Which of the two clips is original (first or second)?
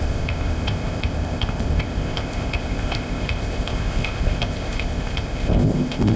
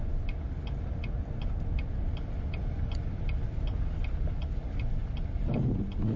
second